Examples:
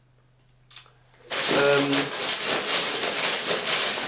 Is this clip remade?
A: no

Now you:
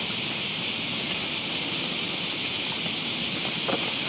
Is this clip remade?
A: no